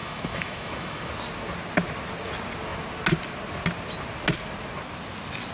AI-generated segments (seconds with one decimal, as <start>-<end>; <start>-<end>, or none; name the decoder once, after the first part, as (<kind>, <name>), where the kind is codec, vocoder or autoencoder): 0.0-1.1 (autoencoder, DAC-VAE)